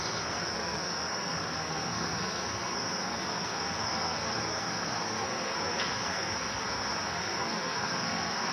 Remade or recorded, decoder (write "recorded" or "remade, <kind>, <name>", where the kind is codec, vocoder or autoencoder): remade, codec, SNAC